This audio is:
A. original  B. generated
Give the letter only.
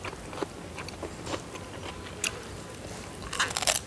A